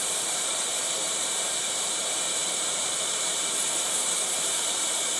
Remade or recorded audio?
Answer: remade